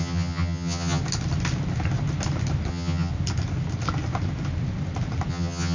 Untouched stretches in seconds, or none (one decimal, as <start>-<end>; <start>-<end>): 1.0-2.7; 3.1-5.3